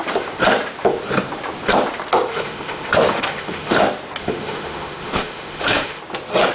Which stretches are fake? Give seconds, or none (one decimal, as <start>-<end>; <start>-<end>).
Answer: 2.3-3.8; 4.2-6.0